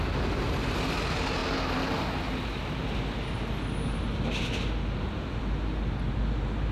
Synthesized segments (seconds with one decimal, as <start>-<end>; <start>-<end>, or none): none